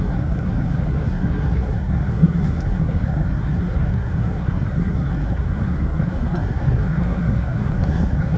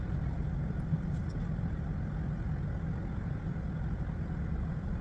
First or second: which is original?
second